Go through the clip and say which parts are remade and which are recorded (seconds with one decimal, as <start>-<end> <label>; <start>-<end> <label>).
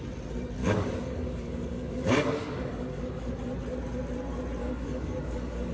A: 0.0-0.6 recorded; 0.6-3.3 remade; 3.3-4.6 recorded; 4.6-5.7 remade